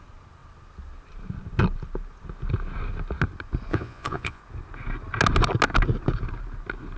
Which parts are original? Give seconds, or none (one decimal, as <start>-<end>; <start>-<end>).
0.0-3.7; 4.4-7.0

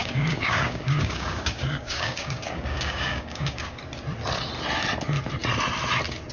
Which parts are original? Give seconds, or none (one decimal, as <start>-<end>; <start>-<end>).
3.8-6.3

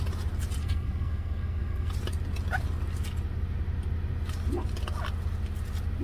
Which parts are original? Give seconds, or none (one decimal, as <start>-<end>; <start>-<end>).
0.0-0.6; 1.9-6.0